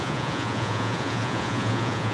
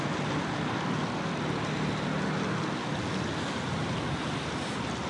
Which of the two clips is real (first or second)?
second